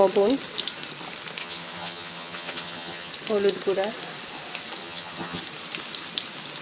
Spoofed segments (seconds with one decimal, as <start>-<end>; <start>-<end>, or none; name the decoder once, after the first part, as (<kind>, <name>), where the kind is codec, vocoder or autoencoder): 1.4-3.1 (vocoder, HiFi-GAN); 4.8-5.4